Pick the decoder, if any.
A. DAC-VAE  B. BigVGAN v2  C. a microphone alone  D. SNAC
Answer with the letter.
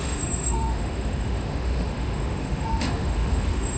A